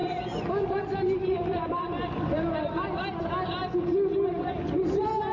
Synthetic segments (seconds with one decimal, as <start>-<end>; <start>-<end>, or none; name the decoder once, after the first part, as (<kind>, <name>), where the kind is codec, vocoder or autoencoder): none